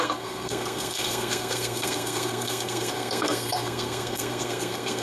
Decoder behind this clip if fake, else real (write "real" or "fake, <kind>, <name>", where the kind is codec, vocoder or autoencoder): fake, codec, SNAC